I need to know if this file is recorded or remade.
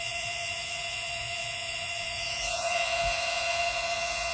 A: remade